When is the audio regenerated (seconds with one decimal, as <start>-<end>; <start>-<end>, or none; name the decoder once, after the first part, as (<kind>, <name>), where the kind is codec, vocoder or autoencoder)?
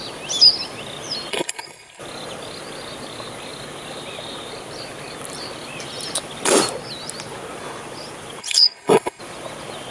1.3-2.0 (codec, HILCodec); 8.4-9.2